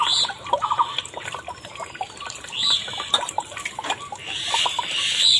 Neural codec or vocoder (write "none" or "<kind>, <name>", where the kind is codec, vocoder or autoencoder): vocoder, BigVGAN v2